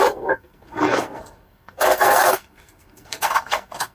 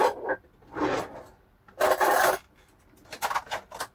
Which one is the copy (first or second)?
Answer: first